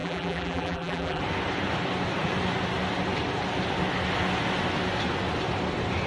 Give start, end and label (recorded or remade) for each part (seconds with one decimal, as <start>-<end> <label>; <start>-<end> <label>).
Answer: 0.0-1.2 remade; 1.2-6.1 recorded